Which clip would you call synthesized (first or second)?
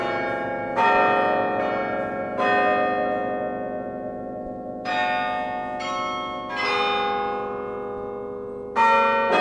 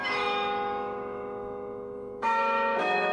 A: second